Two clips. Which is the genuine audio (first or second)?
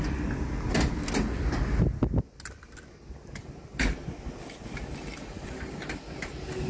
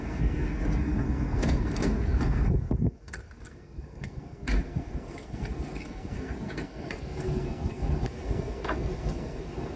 first